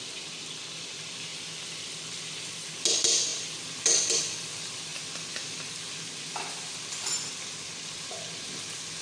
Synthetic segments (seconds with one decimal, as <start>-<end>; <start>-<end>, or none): none